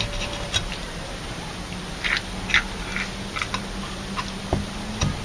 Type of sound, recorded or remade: recorded